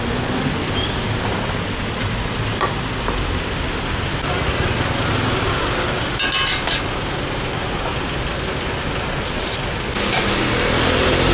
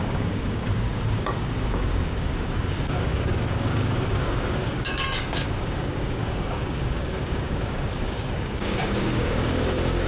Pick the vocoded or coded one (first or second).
second